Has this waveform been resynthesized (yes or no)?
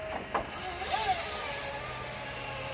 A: no